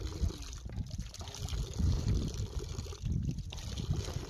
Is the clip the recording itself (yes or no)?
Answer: yes